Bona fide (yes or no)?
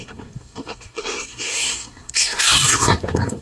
no